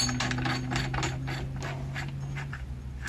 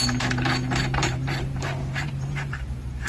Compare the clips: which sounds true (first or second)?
first